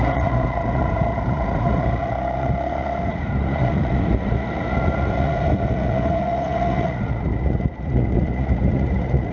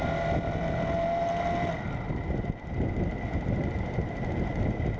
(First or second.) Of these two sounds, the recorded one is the second